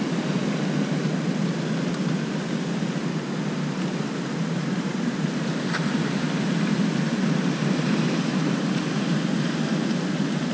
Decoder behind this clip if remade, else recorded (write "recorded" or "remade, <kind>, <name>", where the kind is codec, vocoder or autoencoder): recorded